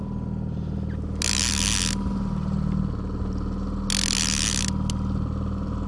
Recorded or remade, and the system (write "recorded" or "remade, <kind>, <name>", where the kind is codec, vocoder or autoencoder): recorded